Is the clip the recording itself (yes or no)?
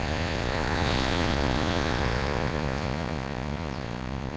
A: no